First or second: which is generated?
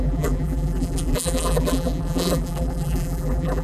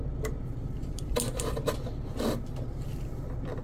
first